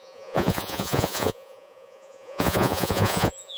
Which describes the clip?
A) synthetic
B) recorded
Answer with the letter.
A